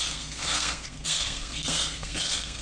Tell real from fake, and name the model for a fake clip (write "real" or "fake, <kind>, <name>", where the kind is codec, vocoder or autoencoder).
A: fake, codec, SNAC